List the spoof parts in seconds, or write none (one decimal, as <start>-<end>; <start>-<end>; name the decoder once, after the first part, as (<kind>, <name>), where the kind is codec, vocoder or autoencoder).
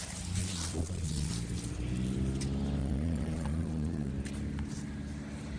0.4-1.3 (vocoder, Vocos); 2.8-4.1